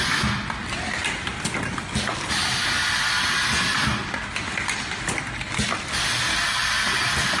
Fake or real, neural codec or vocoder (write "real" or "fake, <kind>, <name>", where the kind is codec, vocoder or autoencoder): real